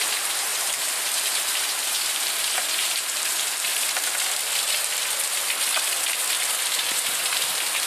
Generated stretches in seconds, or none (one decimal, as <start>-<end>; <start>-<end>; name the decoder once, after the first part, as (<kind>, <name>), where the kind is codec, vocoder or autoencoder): 0.0-3.7 (vocoder, BigVGAN v2); 6.8-7.9